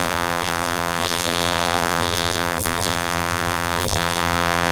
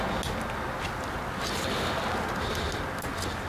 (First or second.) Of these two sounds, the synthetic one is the first